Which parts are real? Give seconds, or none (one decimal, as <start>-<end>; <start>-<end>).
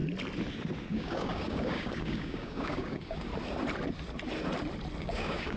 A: 0.0-0.9; 3.3-5.0